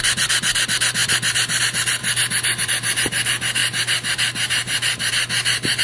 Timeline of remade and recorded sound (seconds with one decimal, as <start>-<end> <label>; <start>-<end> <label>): 0.0-5.8 recorded

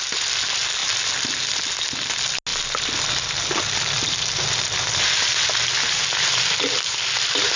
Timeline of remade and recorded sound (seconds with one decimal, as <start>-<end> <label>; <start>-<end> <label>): 0.0-7.6 recorded

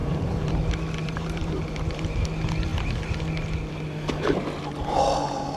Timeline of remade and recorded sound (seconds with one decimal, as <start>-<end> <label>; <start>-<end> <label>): 0.0-0.5 remade; 0.5-1.0 recorded; 1.0-2.1 remade; 2.1-5.6 recorded

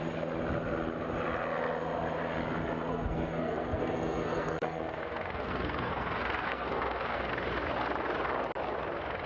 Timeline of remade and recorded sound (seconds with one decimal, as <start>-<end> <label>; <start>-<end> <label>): 0.0-2.9 recorded; 2.9-7.3 remade; 7.3-9.3 recorded

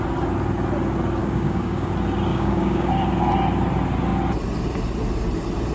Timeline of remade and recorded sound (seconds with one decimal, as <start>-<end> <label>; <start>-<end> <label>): 0.0-1.2 recorded; 1.2-1.9 remade; 1.9-2.3 recorded; 2.3-2.9 remade; 2.9-5.7 recorded

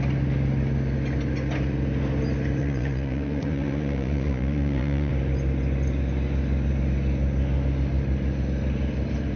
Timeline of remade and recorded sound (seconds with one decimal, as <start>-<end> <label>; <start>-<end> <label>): 0.0-2.6 recorded; 2.6-5.1 remade; 5.1-9.4 recorded

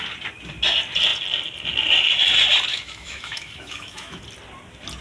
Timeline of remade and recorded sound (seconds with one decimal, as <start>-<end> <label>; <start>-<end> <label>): 0.0-2.7 recorded; 2.7-4.2 remade; 4.2-5.0 recorded

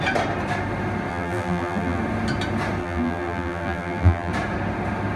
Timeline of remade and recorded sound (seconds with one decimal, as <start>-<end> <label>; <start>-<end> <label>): 0.0-1.1 recorded; 1.1-2.0 remade; 2.0-2.8 recorded; 2.8-4.3 remade; 4.3-5.2 recorded